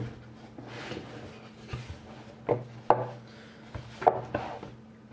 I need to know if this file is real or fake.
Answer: real